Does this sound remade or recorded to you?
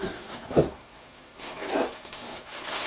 remade